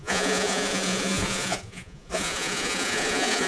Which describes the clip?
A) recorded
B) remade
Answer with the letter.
B